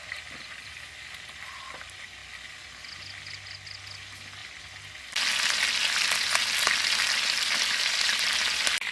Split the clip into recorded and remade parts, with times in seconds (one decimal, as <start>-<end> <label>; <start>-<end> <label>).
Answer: 0.0-8.9 recorded

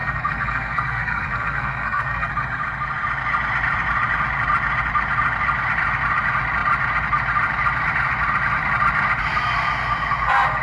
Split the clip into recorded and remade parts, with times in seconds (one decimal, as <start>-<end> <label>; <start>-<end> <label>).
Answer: 0.0-2.3 remade; 2.3-10.6 recorded

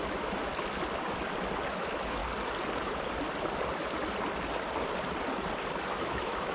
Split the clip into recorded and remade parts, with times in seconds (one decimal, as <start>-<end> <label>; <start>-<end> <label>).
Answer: 0.0-0.5 remade; 0.5-1.8 recorded; 1.8-2.2 remade; 2.2-5.9 recorded; 5.9-6.5 remade

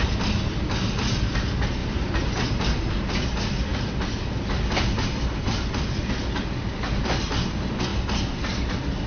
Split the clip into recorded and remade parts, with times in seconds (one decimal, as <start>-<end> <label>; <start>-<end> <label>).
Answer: 0.0-1.8 recorded; 1.8-2.4 remade; 2.4-7.9 recorded; 7.9-8.7 remade; 8.7-9.1 recorded